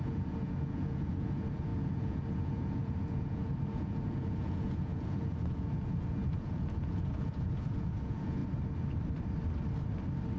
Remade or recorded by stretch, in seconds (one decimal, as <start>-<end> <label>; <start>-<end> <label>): 0.0-8.4 remade; 8.4-10.4 recorded